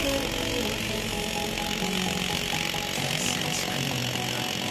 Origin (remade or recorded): recorded